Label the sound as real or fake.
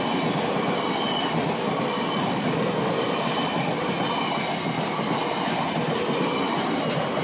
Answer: real